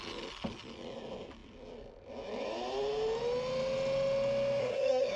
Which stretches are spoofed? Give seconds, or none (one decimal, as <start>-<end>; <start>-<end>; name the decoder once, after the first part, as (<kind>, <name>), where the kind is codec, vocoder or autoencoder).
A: 4.6-5.2 (codec, SNAC)